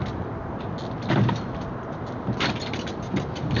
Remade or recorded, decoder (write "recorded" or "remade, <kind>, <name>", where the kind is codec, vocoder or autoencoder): recorded